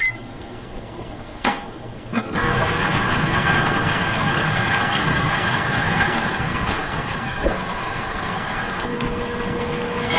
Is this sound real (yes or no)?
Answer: no